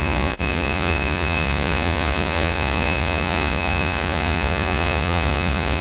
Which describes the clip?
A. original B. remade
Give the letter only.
B